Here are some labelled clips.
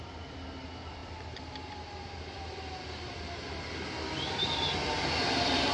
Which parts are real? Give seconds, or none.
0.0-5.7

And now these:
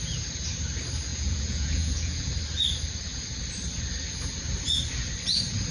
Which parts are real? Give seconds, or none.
0.0-1.1; 2.3-5.7

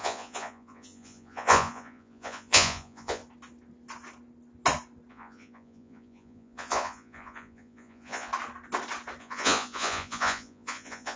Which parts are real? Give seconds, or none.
3.2-5.1; 8.3-9.2

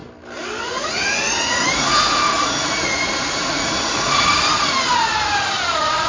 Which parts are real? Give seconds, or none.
0.0-0.6

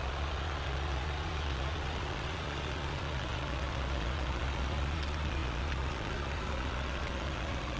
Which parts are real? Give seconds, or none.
none